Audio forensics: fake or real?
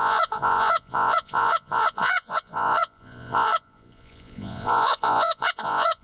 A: fake